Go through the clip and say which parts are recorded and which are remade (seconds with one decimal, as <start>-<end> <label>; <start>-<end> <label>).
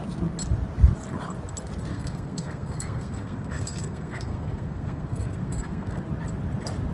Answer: 0.0-1.9 recorded; 1.9-6.0 remade; 6.0-6.9 recorded